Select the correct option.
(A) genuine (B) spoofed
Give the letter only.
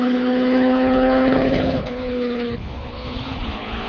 B